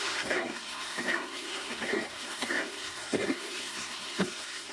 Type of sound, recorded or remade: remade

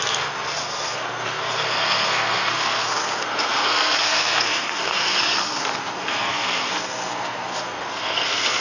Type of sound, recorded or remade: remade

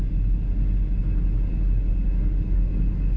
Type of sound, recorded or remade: recorded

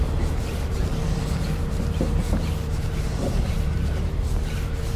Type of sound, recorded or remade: remade